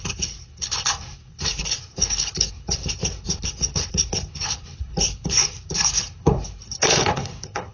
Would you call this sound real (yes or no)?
no